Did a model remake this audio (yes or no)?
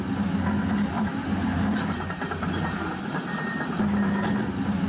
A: no